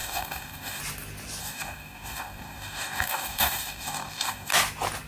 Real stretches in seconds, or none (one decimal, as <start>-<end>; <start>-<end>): 0.8-1.4; 4.5-5.1